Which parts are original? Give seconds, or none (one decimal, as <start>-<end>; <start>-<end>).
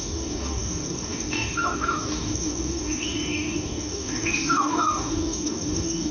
none